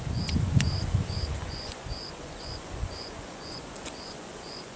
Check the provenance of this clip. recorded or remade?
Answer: remade